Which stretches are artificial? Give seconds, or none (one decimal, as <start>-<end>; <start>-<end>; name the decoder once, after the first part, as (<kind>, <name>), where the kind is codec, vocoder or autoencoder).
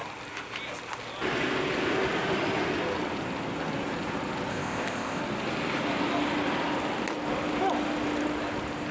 4.5-5.2 (codec, ZipCodec)